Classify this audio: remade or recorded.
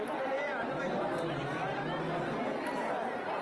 recorded